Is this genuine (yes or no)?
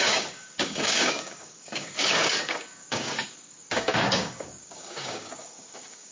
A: no